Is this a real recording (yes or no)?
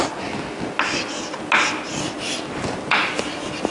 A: yes